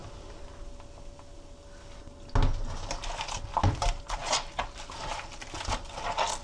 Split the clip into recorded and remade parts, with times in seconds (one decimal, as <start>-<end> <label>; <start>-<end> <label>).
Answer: 0.0-6.4 recorded